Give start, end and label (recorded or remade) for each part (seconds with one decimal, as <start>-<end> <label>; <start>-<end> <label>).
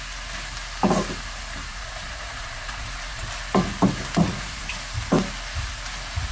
0.0-1.7 recorded; 1.7-3.3 remade; 3.3-4.2 recorded; 4.2-4.7 remade; 4.7-6.3 recorded